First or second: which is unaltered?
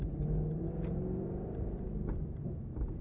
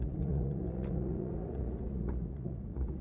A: first